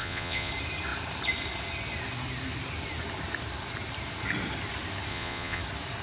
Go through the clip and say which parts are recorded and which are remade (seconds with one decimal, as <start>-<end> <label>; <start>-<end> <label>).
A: 0.0-0.5 remade; 0.5-5.1 recorded; 5.1-5.6 remade; 5.6-6.0 recorded